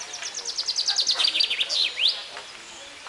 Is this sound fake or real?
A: real